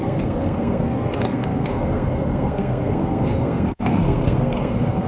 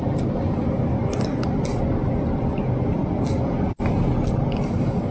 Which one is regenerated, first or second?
first